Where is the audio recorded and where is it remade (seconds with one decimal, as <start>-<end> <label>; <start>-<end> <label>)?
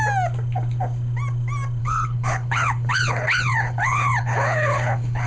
0.0-1.8 recorded; 1.8-5.3 remade